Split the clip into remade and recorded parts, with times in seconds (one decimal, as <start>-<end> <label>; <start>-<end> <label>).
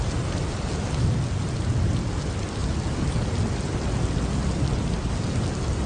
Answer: 0.0-5.9 recorded